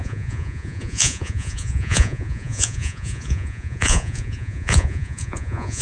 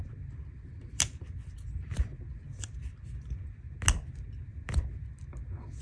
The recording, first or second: second